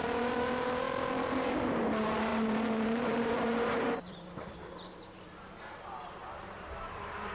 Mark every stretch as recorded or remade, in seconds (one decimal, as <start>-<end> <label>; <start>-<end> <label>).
0.0-7.3 remade